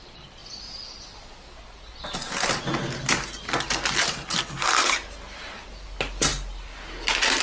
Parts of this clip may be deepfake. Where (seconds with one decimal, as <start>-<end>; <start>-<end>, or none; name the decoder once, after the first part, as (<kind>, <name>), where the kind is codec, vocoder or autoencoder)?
none